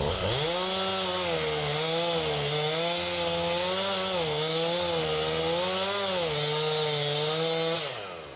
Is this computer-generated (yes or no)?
no